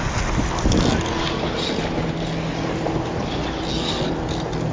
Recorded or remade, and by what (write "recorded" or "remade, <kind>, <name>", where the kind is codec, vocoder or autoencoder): recorded